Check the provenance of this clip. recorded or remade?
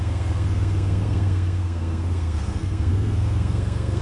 remade